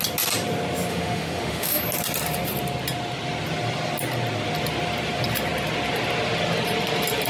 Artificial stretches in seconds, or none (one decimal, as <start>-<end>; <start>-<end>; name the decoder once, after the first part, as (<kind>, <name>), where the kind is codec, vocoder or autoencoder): 0.9-1.8 (autoencoder, DAC-VAE)